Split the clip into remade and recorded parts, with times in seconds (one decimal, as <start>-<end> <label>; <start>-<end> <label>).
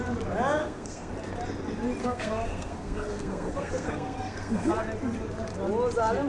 0.0-0.6 recorded; 0.6-1.1 remade; 1.1-2.0 recorded; 2.0-4.7 remade; 4.7-6.3 recorded